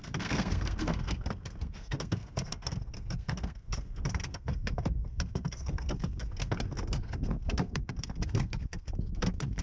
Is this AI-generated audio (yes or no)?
yes